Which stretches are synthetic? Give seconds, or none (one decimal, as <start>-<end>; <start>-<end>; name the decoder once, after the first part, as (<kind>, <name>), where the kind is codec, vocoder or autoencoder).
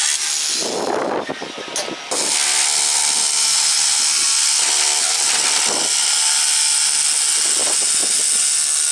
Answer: none